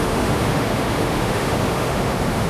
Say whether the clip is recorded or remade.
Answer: remade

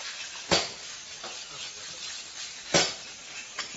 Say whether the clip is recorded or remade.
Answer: recorded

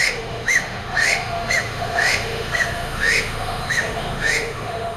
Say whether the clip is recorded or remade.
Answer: remade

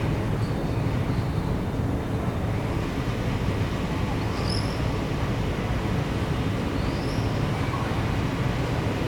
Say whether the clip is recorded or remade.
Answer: recorded